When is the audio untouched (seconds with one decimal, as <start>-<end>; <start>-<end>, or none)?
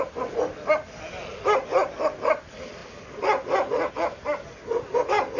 0.0-5.4